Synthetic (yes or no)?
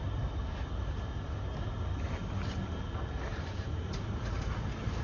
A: no